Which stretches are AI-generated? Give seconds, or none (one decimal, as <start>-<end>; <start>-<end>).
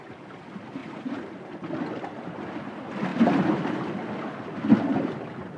none